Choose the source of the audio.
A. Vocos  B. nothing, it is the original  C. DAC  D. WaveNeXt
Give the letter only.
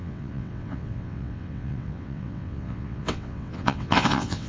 D